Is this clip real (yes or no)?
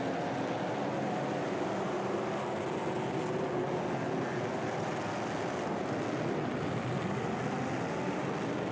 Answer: yes